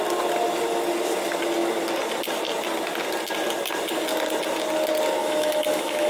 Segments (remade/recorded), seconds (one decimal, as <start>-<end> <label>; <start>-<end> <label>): 0.0-5.2 recorded; 5.2-6.1 remade